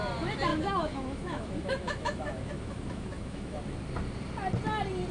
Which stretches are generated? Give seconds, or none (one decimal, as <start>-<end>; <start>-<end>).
0.5-3.6